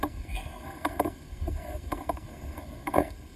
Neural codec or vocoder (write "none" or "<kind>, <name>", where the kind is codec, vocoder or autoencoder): codec, SNAC